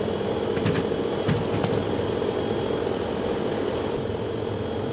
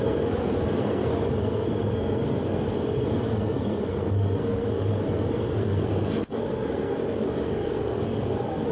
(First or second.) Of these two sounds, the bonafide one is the first